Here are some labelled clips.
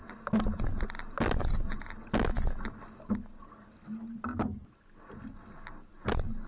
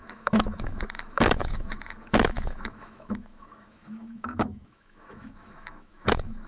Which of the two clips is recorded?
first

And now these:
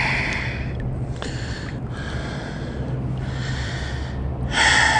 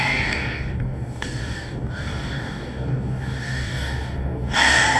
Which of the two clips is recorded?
first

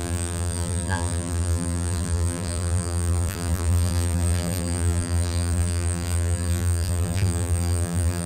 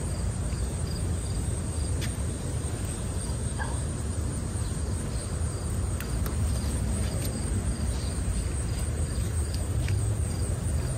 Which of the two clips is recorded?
second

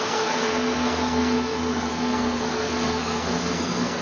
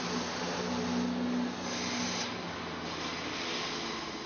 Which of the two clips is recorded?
second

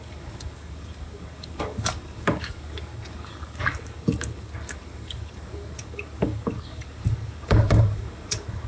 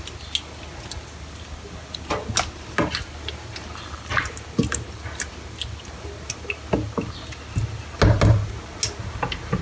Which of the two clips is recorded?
second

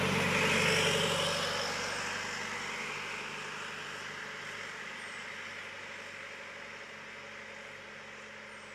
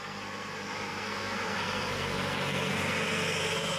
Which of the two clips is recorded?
first